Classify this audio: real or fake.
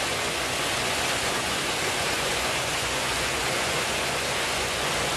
fake